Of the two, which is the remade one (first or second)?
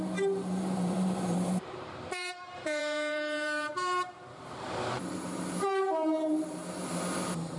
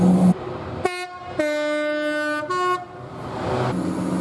first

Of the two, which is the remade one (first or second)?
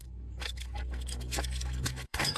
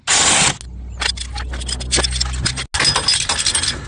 first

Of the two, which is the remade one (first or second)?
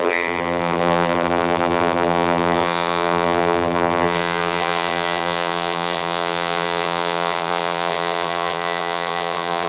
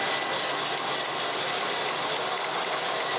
first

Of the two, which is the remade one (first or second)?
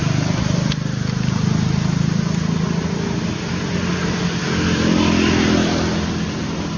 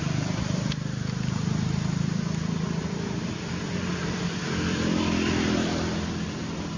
second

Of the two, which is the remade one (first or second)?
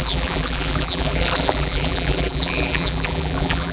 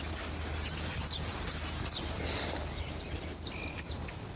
first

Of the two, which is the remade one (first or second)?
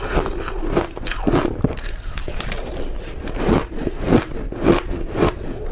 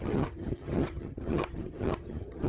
second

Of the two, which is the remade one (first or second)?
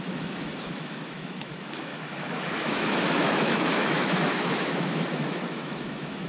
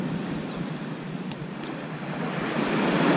first